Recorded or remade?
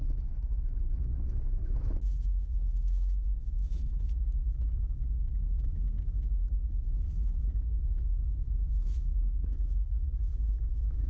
remade